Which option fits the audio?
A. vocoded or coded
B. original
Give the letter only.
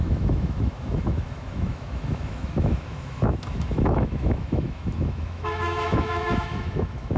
A